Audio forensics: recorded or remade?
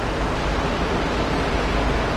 recorded